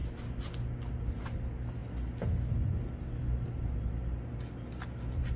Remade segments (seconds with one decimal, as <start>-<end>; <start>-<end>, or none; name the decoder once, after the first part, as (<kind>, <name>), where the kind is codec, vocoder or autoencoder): none